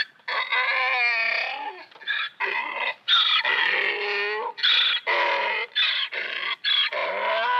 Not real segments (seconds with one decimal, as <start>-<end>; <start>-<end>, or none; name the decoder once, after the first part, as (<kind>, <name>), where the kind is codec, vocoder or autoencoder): none